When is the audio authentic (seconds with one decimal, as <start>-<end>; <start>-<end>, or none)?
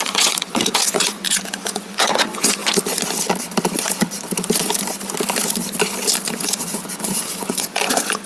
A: 2.6-6.4